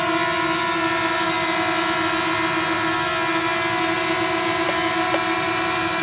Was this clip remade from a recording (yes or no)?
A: no